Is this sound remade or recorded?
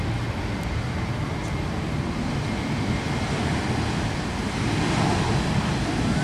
recorded